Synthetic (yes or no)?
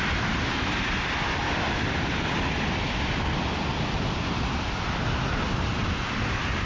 no